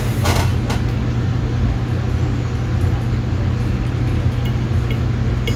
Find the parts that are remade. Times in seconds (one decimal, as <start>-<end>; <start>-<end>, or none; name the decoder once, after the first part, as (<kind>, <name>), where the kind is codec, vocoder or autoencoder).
none